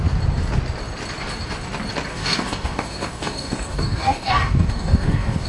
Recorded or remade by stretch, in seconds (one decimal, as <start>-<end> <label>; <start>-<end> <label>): 0.0-2.1 recorded; 2.1-5.5 remade